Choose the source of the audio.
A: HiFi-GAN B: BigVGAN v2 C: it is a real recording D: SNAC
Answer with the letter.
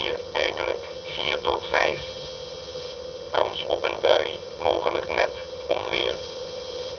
A